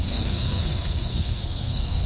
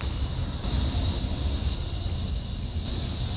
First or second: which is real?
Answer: second